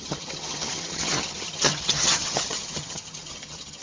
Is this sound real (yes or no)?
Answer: no